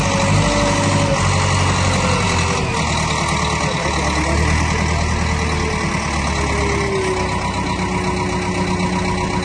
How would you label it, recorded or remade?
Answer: recorded